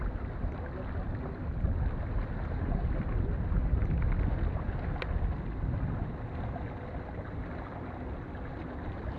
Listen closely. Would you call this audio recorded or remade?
recorded